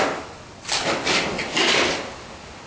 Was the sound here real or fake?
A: real